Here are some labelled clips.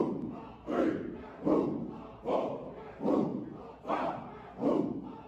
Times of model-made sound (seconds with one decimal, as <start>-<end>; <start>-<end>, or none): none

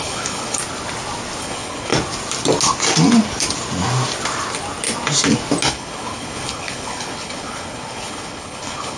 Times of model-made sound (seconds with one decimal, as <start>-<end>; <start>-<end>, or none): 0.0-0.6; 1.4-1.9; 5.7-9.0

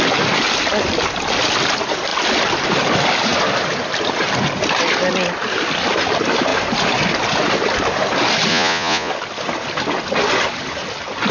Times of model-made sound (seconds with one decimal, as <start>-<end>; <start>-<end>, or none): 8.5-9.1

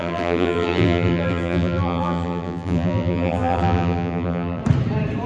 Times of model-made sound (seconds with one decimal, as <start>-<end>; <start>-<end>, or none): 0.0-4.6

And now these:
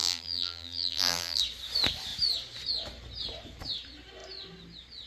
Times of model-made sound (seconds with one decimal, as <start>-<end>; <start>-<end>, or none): 0.0-1.4

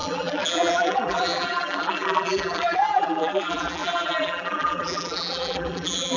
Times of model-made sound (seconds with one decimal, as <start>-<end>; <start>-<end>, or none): 0.0-6.2

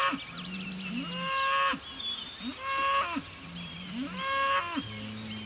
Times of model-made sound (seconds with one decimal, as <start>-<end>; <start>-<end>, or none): none

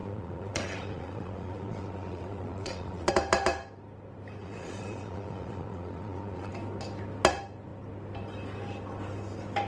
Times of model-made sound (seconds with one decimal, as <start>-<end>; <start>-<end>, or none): 0.0-3.1; 4.4-6.5